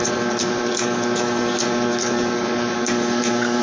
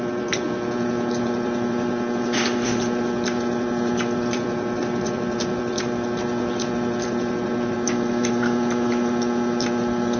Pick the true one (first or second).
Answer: second